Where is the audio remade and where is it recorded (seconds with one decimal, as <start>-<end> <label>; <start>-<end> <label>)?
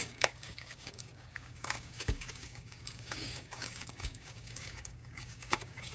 0.0-5.9 remade